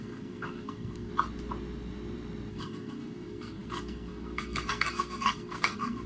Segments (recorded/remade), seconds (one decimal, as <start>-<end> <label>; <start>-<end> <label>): 0.0-1.1 remade; 1.1-2.5 recorded; 2.5-6.1 remade